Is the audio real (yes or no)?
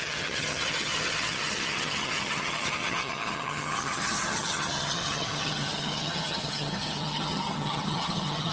no